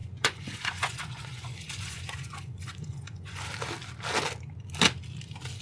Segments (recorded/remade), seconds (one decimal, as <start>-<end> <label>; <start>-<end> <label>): 0.0-3.4 remade; 3.4-5.6 recorded